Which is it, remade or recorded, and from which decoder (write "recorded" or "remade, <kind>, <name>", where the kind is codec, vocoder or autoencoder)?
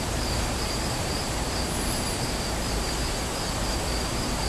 remade, vocoder, BigVGAN v2